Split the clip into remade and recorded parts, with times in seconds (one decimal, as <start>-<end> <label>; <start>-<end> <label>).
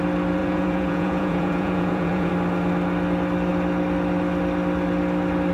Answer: 0.0-0.4 recorded; 0.4-2.3 remade; 2.3-5.5 recorded